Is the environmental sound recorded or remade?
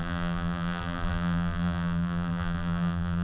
remade